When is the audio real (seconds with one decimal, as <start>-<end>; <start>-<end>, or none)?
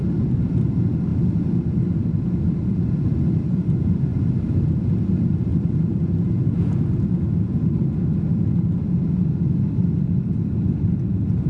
1.1-2.1; 4.1-5.1; 5.5-9.7